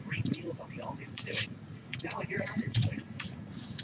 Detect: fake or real fake